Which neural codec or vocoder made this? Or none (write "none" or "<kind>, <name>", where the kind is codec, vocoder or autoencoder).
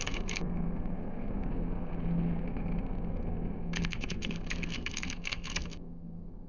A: codec, SNAC